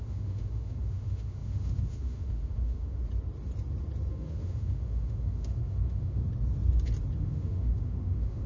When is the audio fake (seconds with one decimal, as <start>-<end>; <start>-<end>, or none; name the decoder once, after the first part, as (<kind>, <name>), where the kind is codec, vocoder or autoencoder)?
0.0-3.0 (autoencoder, DAC-VAE); 4.1-6.2; 7.2-8.5